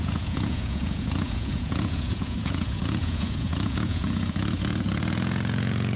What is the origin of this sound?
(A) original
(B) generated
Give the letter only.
B